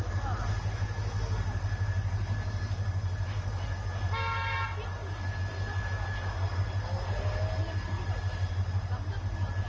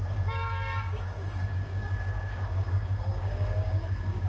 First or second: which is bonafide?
first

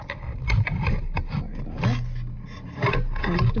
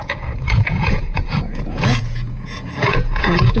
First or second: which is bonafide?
first